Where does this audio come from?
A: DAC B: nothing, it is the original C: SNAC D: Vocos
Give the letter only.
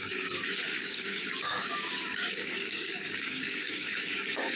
A